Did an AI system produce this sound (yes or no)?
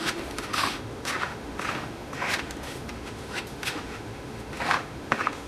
yes